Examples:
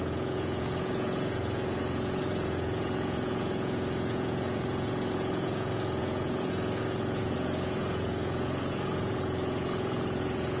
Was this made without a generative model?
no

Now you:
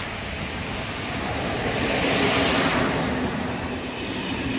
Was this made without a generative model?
yes